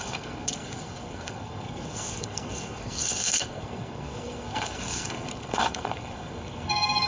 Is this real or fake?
fake